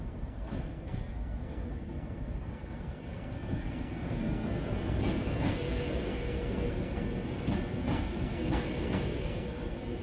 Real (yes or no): no